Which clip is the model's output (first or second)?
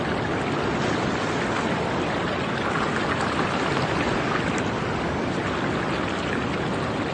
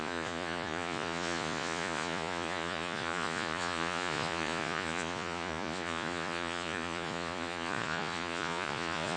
second